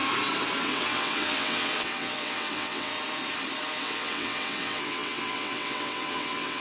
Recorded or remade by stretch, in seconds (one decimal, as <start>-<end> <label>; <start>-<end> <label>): 0.0-0.6 recorded; 0.6-2.9 remade; 2.9-3.8 recorded; 3.8-6.6 remade